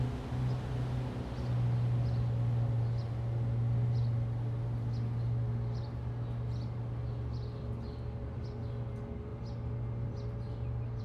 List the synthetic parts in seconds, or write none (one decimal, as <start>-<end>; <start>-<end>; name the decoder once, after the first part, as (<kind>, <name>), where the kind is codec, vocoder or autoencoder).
none